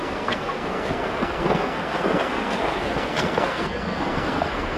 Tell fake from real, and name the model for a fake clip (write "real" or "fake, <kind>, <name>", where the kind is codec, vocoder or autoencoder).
fake, codec, SNAC